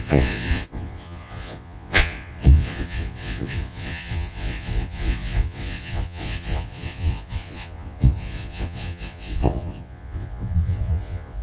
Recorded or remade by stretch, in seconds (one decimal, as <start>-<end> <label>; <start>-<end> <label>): 0.0-11.4 remade